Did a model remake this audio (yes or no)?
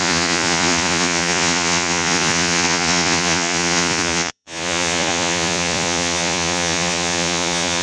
yes